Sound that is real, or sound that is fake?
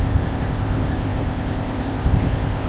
fake